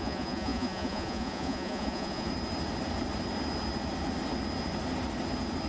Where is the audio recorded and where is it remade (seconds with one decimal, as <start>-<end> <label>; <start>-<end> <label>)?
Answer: 0.0-2.3 remade; 2.3-5.7 recorded